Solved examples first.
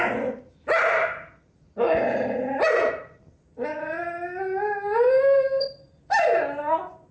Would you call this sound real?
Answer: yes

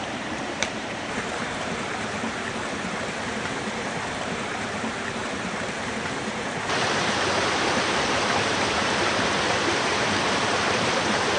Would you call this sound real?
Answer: no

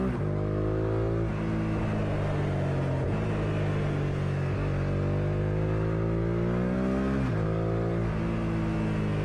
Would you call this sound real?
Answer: yes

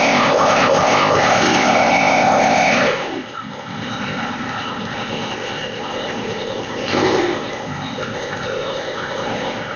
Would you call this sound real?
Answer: no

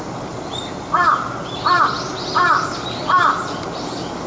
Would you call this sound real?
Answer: yes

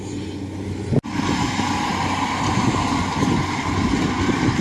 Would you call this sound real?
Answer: yes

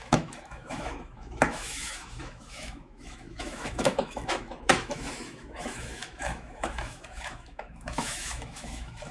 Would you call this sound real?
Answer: no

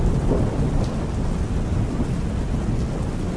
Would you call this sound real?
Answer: yes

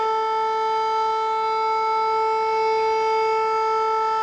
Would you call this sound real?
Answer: yes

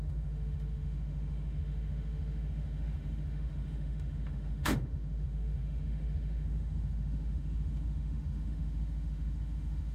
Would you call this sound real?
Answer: no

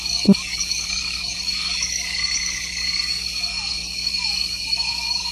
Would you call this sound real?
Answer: no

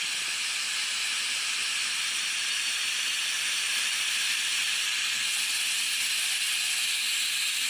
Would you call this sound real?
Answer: yes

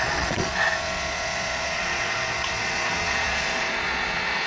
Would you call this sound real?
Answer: no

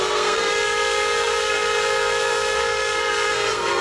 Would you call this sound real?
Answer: no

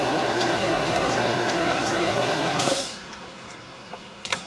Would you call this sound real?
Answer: no